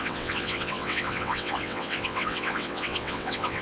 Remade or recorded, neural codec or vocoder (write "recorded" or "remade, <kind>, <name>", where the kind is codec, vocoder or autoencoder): remade, vocoder, WaveNeXt